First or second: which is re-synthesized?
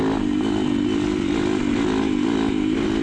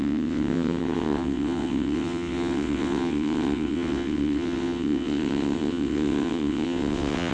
second